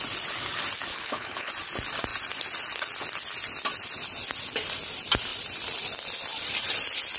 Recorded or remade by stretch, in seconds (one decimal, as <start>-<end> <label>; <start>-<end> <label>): 0.0-0.9 recorded; 0.9-1.5 remade; 1.5-7.2 recorded

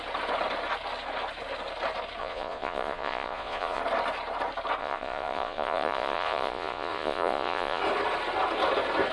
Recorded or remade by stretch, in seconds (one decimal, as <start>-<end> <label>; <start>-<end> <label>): 0.0-2.2 recorded; 2.2-3.8 remade; 3.8-4.8 recorded; 4.8-7.8 remade; 7.8-9.1 recorded

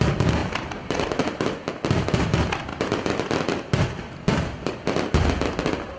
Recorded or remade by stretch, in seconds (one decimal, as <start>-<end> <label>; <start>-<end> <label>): 0.0-0.4 recorded; 0.4-0.9 remade; 0.9-2.7 recorded; 2.7-4.7 remade; 4.7-6.0 recorded

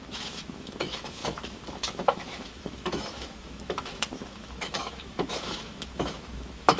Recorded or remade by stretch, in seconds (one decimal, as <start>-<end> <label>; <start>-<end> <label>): 0.0-6.8 remade

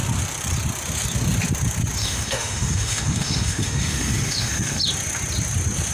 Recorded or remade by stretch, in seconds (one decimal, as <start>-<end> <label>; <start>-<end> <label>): 0.0-2.0 recorded; 2.0-4.8 remade; 4.8-5.9 recorded